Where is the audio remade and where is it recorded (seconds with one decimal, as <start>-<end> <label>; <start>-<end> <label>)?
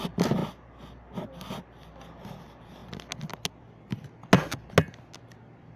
0.0-0.4 remade; 0.4-2.1 recorded; 2.1-2.8 remade; 2.8-5.8 recorded